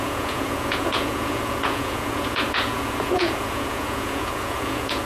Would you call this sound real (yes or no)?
no